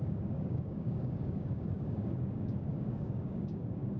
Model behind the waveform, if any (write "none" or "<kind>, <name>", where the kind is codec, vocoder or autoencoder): codec, DAC